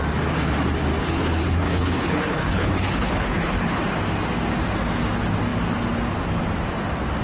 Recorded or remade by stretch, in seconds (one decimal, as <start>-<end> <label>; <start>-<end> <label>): 0.0-1.0 recorded; 1.0-3.8 remade; 3.8-7.2 recorded